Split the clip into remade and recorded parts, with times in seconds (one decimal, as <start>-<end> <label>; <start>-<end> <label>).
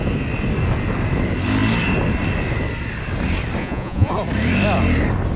0.0-3.6 recorded; 3.6-4.1 remade; 4.1-5.4 recorded